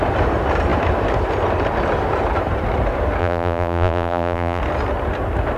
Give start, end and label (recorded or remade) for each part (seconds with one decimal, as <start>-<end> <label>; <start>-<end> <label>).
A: 0.0-3.2 recorded; 3.2-4.6 remade; 4.6-5.6 recorded